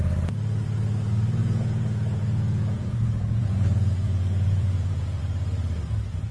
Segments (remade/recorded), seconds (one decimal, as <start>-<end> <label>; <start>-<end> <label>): 0.0-1.4 recorded; 1.4-5.2 remade; 5.2-6.3 recorded

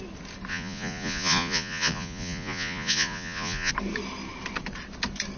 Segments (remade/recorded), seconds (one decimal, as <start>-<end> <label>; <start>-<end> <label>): 0.0-0.5 recorded; 0.5-3.7 remade; 3.7-5.4 recorded

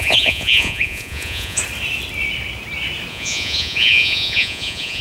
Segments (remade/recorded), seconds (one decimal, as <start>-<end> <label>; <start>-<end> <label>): 0.0-1.6 remade; 1.6-3.1 recorded; 3.1-5.0 remade

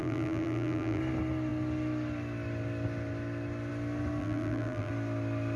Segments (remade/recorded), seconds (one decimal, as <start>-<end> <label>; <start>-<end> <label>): 0.0-1.0 remade; 1.0-4.2 recorded; 4.2-4.9 remade; 4.9-5.6 recorded

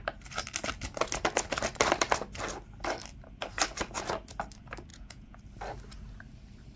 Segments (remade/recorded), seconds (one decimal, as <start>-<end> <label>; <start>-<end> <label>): 0.0-4.9 recorded; 4.9-5.4 remade; 5.4-6.8 recorded

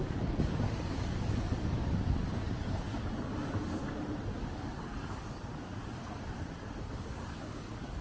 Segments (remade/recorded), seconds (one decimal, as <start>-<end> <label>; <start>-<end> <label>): 0.0-2.2 remade; 2.2-2.8 recorded; 2.8-3.8 remade; 3.8-4.3 recorded; 4.3-5.8 remade; 5.8-6.8 recorded; 6.8-8.0 remade

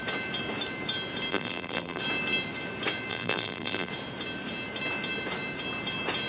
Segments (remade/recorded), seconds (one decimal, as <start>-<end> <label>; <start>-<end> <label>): 0.0-1.3 recorded; 1.3-2.0 remade; 2.0-3.1 recorded; 3.1-3.9 remade; 3.9-6.3 recorded

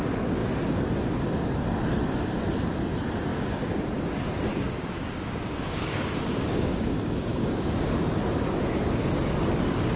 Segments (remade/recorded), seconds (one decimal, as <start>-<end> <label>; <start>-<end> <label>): 0.0-3.3 recorded; 3.3-3.8 remade; 3.8-4.5 recorded; 4.5-8.0 remade; 8.0-10.0 recorded